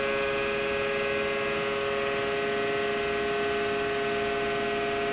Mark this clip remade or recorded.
recorded